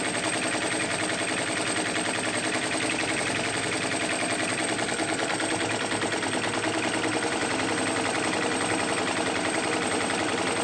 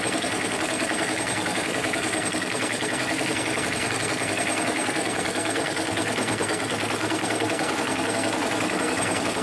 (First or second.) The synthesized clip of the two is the second